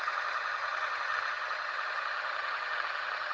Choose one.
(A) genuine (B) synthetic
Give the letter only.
B